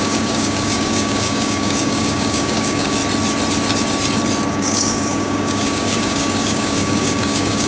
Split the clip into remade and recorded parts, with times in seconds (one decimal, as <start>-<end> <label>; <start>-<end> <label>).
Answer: 0.0-3.0 remade; 3.0-4.5 recorded; 4.5-7.7 remade